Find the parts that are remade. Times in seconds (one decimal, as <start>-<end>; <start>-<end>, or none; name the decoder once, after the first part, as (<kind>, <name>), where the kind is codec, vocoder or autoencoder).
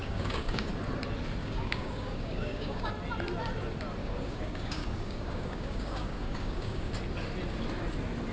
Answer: 0.0-0.7 (codec, DAC); 1.4-2.9; 4.0-6.9